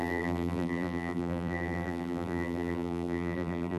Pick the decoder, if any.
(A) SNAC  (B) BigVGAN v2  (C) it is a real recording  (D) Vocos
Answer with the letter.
B